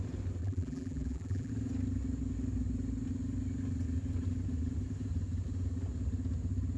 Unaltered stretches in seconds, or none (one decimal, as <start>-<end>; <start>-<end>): 0.0-0.4; 1.5-6.8